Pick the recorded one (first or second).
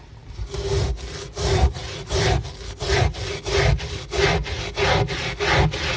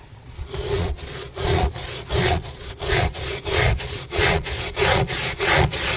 first